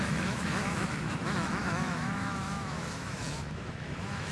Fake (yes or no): yes